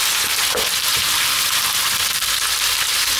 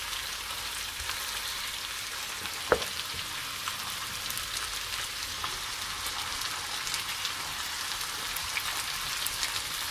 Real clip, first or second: second